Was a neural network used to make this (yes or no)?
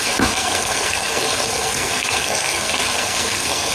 yes